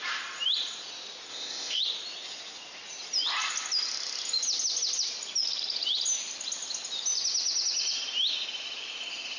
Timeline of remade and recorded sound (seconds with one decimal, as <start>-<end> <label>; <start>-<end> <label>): 0.0-1.3 recorded; 1.3-1.8 remade; 1.8-9.4 recorded